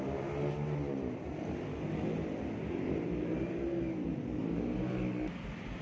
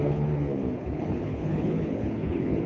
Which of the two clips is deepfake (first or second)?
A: second